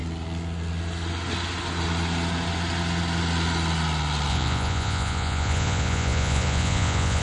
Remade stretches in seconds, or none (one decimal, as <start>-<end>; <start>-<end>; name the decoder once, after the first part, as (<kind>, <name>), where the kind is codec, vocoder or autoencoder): 4.3-7.2 (vocoder, Vocos)